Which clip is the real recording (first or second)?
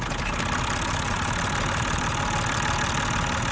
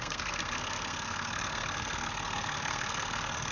first